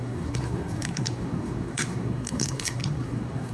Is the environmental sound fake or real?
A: fake